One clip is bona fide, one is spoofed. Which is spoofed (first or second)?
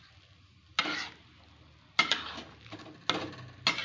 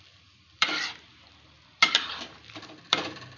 second